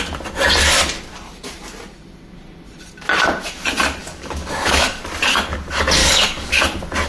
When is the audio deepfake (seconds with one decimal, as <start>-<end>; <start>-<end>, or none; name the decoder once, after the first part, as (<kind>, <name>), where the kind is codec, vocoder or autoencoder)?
4.0-5.0 (codec, DAC); 6.0-6.6